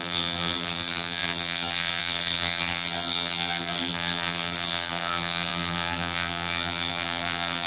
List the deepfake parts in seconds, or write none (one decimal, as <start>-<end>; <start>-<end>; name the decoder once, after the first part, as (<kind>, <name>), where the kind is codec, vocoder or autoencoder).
0.0-7.7 (vocoder, BigVGAN v2)